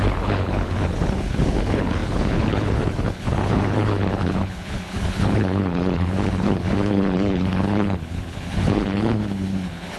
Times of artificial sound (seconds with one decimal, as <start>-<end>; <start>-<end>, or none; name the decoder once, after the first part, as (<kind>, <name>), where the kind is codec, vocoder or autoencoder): 0.0-10.0 (codec, HILCodec)